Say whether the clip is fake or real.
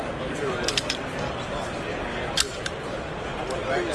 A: real